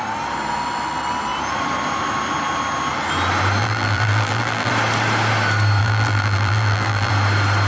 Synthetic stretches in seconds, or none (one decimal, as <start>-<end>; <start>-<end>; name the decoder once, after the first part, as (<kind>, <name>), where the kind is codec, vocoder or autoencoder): 3.6-4.7 (vocoder, BigVGAN v2); 5.8-7.1